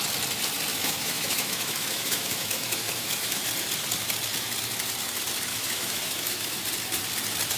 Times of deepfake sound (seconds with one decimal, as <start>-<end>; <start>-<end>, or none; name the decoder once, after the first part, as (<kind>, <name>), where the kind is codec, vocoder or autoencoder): 0.7-3.4 (autoencoder, DAC-VAE); 5.5-6.6